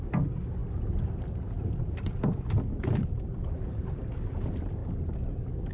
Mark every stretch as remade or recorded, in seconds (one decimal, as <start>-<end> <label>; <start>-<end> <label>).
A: 0.0-5.7 recorded